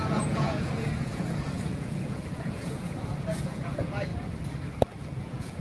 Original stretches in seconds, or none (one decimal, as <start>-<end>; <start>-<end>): 4.1-5.0